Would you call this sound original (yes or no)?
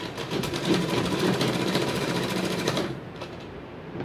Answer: no